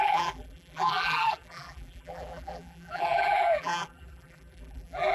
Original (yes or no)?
no